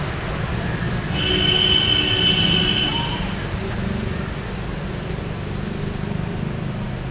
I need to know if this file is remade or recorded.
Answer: recorded